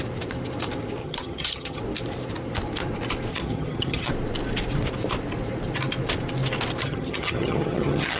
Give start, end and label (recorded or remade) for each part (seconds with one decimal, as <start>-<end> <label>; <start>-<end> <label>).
0.0-1.0 recorded; 1.0-1.8 remade; 1.8-3.3 recorded; 3.3-4.1 remade; 4.1-6.8 recorded; 6.8-8.2 remade